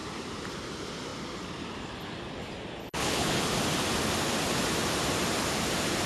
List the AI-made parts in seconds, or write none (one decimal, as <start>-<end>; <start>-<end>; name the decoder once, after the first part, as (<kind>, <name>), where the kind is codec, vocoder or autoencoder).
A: 2.8-3.4 (codec, HILCodec)